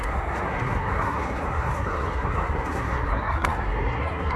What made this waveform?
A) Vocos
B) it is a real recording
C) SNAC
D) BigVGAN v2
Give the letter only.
C